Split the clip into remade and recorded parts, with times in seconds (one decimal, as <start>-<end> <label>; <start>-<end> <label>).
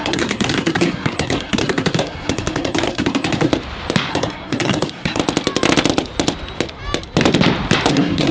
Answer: 0.0-3.5 remade; 3.5-4.1 recorded; 4.1-5.2 remade; 5.2-7.9 recorded; 7.9-8.3 remade